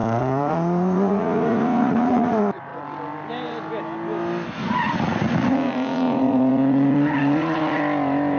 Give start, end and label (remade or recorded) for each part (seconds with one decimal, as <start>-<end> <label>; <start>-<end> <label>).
0.0-2.7 remade; 2.7-4.6 recorded; 4.6-7.8 remade; 7.8-8.4 recorded